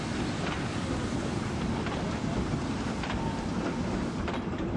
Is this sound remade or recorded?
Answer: recorded